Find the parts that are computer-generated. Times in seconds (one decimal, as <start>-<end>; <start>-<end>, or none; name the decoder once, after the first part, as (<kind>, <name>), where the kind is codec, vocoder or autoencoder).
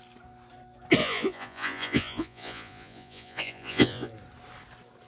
1.0-4.1 (vocoder, Vocos)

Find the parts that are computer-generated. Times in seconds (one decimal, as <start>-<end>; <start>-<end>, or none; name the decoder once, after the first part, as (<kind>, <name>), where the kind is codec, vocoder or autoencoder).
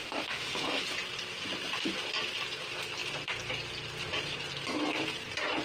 0.0-0.8 (autoencoder, DAC-VAE)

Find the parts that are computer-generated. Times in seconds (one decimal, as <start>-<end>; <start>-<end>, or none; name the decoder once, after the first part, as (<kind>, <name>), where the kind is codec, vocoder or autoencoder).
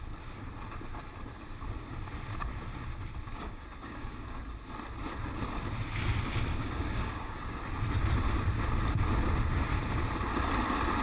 3.3-4.4 (codec, DAC); 6.5-7.6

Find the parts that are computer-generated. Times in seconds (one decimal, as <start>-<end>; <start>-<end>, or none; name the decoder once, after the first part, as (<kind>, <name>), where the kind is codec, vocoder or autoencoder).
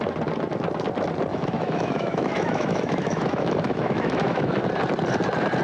1.3-4.7 (autoencoder, DAC-VAE)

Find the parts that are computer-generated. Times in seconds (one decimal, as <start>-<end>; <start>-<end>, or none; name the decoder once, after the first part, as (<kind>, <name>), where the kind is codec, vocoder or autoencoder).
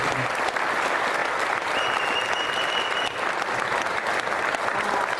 none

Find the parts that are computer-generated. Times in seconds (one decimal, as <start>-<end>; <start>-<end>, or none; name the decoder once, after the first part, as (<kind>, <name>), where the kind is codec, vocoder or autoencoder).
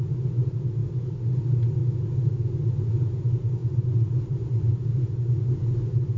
3.6-5.4 (vocoder, BigVGAN v2)